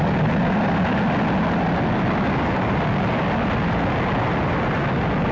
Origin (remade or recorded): recorded